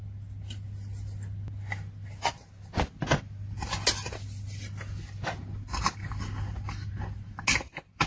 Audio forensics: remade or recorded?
recorded